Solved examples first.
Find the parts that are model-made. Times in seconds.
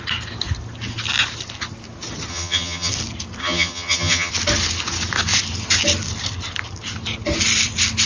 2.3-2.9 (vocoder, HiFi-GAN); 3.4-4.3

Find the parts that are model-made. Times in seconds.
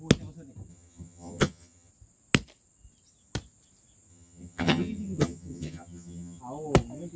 0.7-1.9 (vocoder, HiFi-GAN); 4.1-6.4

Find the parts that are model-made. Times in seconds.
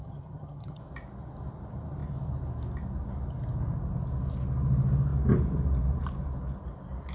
0.0-0.8 (vocoder, HiFi-GAN)